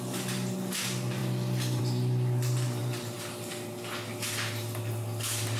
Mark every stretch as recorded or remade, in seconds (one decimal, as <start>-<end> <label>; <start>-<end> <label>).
0.0-5.6 recorded